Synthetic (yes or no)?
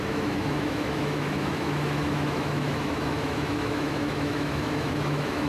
yes